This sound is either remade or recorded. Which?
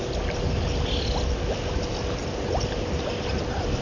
recorded